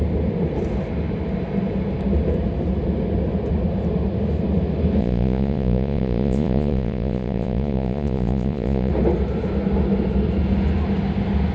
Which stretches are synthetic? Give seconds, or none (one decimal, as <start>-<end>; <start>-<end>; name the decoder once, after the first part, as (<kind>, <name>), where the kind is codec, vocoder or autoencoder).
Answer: 5.0-8.9 (vocoder, Vocos)